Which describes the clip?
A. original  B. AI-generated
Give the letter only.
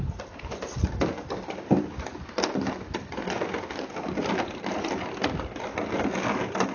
A